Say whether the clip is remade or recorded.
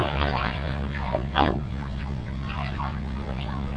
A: remade